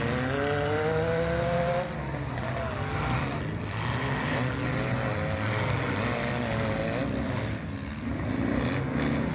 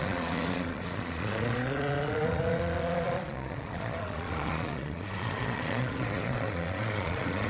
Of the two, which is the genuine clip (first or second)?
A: first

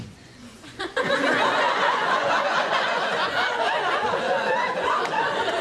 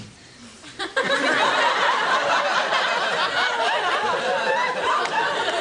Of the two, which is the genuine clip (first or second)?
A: second